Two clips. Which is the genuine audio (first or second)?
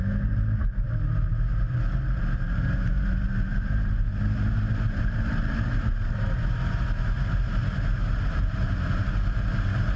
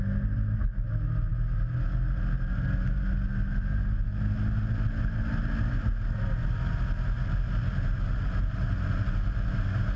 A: second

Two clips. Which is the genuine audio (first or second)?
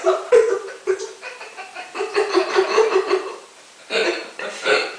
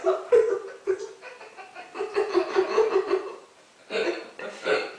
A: second